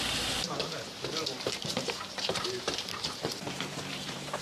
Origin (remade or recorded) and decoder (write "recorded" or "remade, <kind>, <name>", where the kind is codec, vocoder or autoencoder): remade, vocoder, BigVGAN v2